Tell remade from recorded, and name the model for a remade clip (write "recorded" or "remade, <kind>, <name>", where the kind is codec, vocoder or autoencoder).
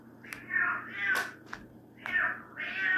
recorded